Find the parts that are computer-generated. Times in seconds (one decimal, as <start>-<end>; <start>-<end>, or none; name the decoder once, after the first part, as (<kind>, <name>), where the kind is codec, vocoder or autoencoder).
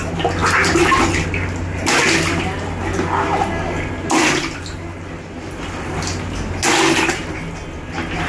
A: none